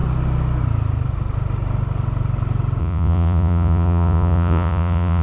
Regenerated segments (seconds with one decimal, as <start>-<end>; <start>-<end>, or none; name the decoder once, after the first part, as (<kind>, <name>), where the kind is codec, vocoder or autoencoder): 2.8-5.2 (vocoder, Vocos)